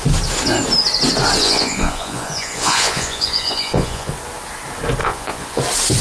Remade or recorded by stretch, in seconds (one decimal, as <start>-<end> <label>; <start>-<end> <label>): 0.0-1.4 recorded; 1.4-4.1 remade; 4.1-5.0 recorded; 5.0-5.6 remade; 5.6-6.0 recorded